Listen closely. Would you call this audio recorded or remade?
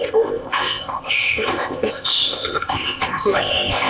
remade